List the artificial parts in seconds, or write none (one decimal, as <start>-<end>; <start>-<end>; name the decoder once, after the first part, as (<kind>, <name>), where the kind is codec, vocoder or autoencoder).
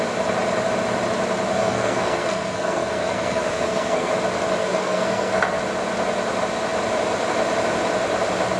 1.6-4.1 (codec, SNAC); 4.6-5.6